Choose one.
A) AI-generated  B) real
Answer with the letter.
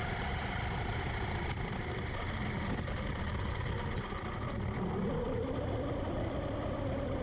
B